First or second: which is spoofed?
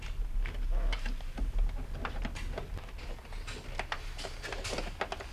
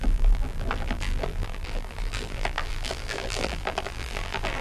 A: second